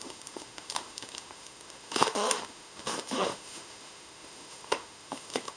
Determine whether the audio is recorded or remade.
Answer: remade